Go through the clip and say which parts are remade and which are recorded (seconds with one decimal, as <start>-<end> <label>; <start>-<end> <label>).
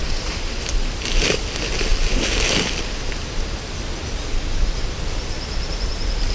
0.0-1.4 remade; 1.4-6.3 recorded